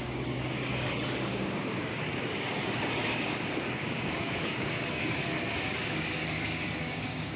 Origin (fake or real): fake